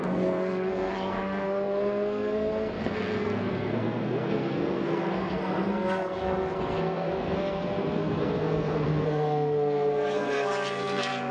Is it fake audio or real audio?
fake